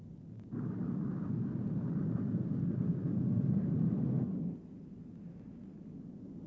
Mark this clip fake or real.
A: real